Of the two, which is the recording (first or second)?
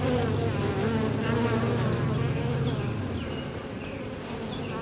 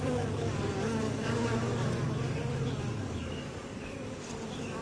first